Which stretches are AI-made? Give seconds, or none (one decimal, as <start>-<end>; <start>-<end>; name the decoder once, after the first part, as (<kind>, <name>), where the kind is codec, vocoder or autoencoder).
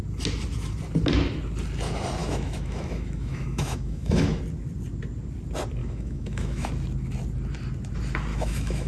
2.2-4.4 (autoencoder, DAC-VAE); 5.8-6.7; 8.3-8.9